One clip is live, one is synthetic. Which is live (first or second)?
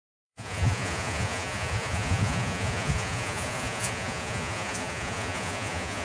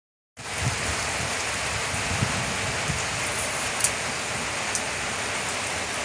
second